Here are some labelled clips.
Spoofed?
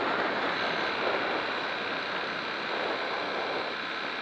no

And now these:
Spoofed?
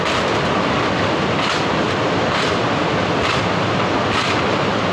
no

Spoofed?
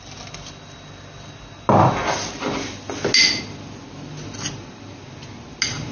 no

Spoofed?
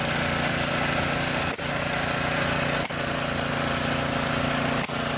no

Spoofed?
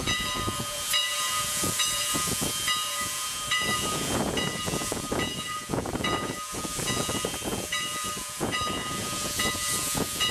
yes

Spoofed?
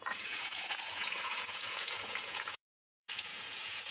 yes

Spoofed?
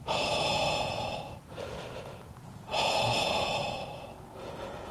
yes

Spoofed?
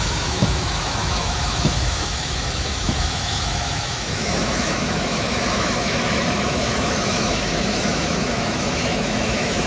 yes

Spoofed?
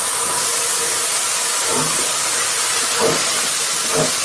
no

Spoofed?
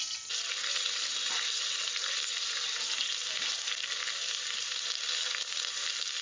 no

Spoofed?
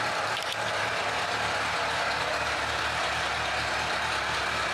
no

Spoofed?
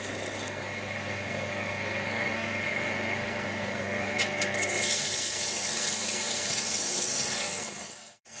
yes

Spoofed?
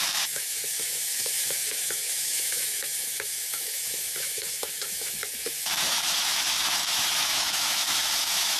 yes